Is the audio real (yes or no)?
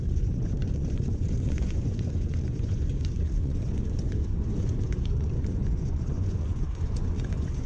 no